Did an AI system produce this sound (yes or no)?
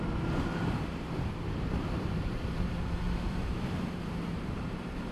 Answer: yes